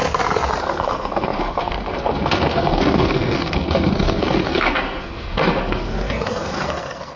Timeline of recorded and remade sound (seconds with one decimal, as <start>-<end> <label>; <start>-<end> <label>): 0.0-0.6 recorded; 0.6-7.2 remade